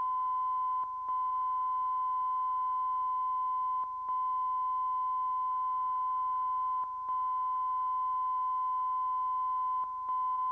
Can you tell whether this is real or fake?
real